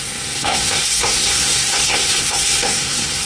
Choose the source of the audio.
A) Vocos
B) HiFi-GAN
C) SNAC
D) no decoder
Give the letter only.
C